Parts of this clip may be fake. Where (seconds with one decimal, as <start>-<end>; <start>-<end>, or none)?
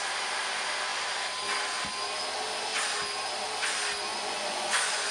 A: 4.1-5.1